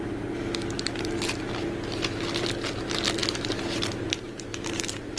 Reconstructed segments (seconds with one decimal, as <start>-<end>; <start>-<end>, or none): 3.2-5.2